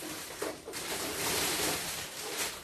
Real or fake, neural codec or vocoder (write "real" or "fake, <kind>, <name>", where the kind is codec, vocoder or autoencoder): fake, vocoder, BigVGAN v2